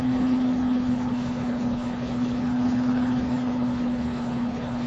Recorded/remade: remade